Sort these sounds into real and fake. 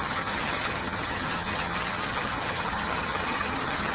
fake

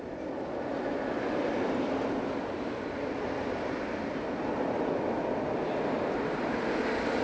real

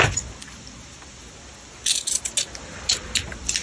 real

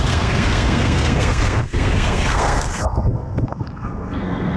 fake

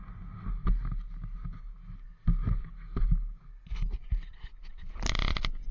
real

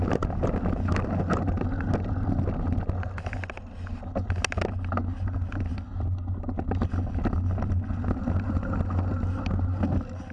real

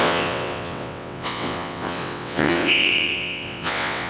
fake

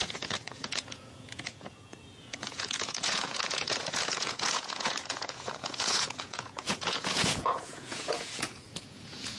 fake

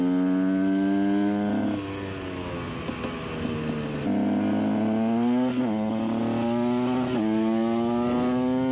real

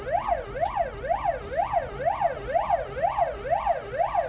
real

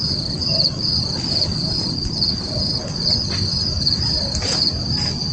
real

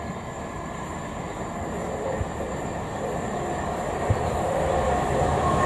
real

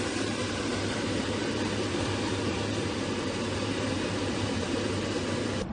fake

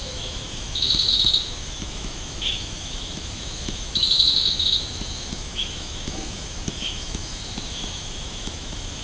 fake